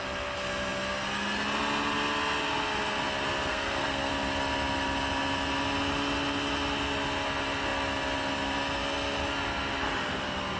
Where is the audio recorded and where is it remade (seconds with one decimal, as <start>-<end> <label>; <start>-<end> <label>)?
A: 0.0-3.5 recorded; 3.5-4.1 remade; 4.1-10.6 recorded